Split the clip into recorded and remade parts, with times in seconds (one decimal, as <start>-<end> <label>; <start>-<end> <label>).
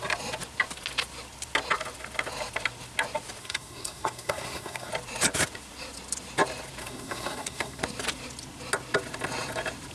0.0-3.4 recorded; 3.4-4.9 remade; 4.9-6.8 recorded; 6.8-7.8 remade; 7.8-9.9 recorded